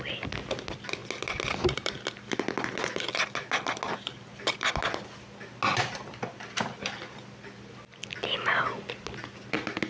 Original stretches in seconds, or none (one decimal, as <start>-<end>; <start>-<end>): 0.0-9.9